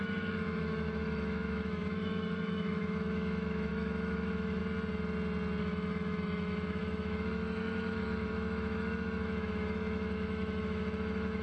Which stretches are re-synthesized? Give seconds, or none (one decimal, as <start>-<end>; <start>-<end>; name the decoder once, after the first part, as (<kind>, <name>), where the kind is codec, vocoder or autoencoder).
0.0-4.6 (autoencoder, DAC-VAE); 5.6-11.4

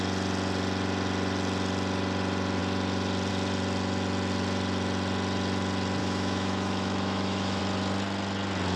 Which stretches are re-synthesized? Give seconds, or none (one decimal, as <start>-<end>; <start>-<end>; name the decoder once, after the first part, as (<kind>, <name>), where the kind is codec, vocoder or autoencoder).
6.0-7.6 (autoencoder, DAC-VAE)

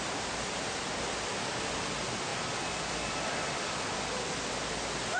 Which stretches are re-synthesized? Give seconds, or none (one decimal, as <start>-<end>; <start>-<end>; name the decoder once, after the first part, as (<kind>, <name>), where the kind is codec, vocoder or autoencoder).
none

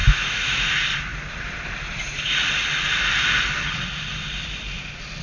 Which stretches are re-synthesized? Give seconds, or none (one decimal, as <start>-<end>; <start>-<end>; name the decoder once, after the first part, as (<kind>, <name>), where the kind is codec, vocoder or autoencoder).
0.0-0.7 (autoencoder, DAC-VAE)

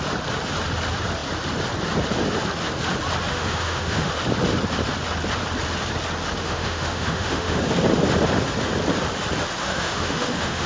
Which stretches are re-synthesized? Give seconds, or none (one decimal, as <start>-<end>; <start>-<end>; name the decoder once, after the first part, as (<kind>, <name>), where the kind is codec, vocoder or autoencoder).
3.3-4.1 (autoencoder, DAC-VAE); 6.4-7.6; 9.6-10.7

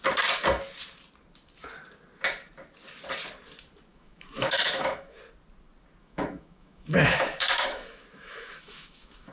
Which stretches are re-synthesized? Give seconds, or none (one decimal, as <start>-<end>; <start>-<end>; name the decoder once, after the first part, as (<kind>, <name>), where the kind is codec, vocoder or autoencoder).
3.9-5.2 (autoencoder, DAC-VAE); 6.0-9.3

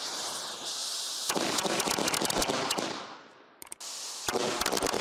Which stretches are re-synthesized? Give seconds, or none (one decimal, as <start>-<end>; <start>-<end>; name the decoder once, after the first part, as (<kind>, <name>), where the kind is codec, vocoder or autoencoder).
none

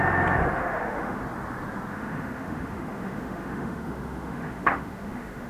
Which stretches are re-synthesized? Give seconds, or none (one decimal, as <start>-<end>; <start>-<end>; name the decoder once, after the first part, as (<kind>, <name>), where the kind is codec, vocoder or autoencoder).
0.6-1.2 (autoencoder, DAC-VAE); 1.9-5.5